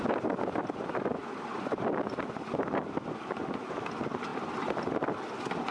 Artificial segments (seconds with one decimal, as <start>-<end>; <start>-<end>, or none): 1.2-2.3